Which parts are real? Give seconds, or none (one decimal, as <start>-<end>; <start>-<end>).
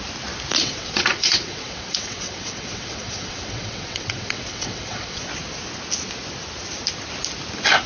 0.0-0.6; 5.3-7.9